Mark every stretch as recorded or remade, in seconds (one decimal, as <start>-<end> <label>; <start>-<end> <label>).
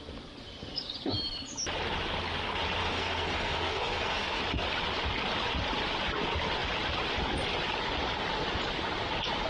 0.0-2.8 recorded; 2.8-4.4 remade; 4.4-9.5 recorded